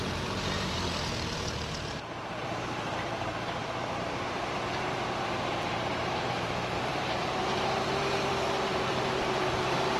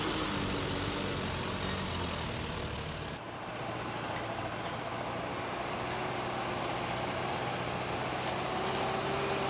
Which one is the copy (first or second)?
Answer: first